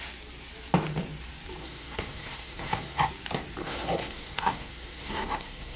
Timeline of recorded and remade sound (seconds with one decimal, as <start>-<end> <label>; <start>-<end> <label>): 0.0-1.6 recorded; 1.6-3.1 remade; 3.1-3.6 recorded; 3.6-5.8 remade